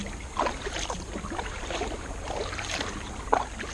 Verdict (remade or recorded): recorded